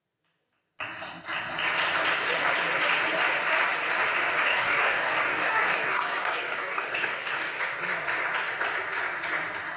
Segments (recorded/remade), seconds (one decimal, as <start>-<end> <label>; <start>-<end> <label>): 0.0-4.5 recorded; 4.5-7.6 remade; 7.6-9.8 recorded